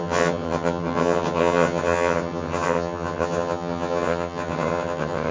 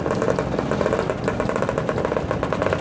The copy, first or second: first